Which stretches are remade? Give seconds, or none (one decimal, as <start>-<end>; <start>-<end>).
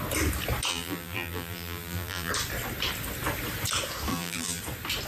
0.7-2.3; 4.1-4.6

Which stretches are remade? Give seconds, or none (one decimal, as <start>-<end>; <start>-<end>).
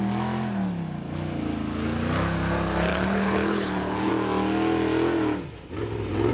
2.9-4.1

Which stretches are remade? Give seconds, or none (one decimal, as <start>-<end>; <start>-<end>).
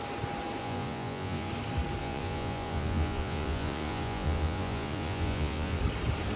0.6-1.5; 2.0-5.8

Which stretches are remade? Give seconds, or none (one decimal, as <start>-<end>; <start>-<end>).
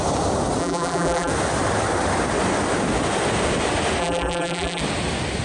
0.6-1.3; 4.0-4.8